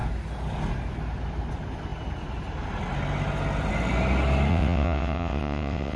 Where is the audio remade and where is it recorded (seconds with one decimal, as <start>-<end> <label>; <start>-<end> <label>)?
0.0-4.5 recorded; 4.5-6.0 remade